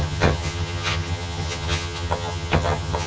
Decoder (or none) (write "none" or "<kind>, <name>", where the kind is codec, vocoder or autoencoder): vocoder, HiFi-GAN